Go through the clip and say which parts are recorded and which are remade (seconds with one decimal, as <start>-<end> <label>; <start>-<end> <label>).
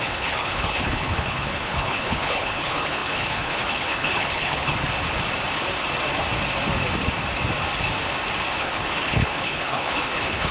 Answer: 0.0-4.7 remade; 4.7-8.6 recorded; 8.6-10.5 remade